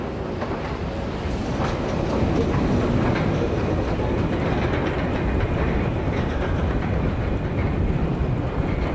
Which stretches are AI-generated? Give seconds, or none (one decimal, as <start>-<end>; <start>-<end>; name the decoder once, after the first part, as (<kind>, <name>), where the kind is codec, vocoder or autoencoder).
1.4-2.3 (vocoder, BigVGAN v2); 7.6-8.2